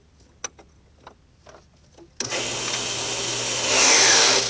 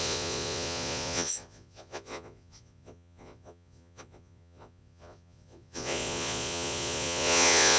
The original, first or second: first